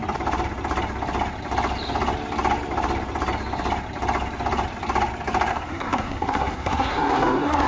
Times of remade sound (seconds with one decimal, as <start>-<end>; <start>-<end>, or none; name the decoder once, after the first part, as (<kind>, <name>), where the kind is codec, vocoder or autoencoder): 5.5-7.7 (codec, SNAC)